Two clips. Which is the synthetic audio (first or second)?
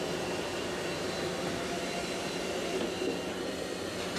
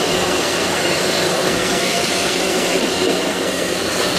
second